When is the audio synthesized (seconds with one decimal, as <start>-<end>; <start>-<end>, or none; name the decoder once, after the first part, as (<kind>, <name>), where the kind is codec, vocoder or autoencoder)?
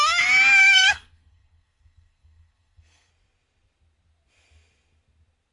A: 0.6-3.1 (codec, SNAC)